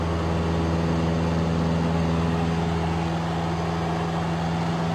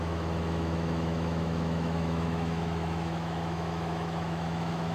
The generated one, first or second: second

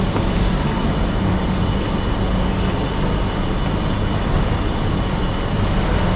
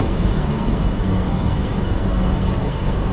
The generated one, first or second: second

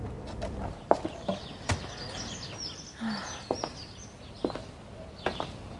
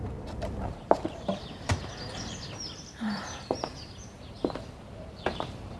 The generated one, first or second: second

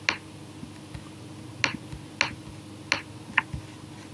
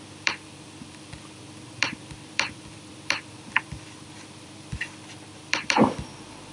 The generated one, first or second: second